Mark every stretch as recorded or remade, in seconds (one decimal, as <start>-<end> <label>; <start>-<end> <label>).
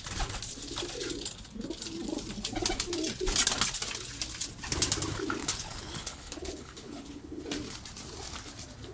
0.0-5.4 recorded; 5.4-7.4 remade; 7.4-8.9 recorded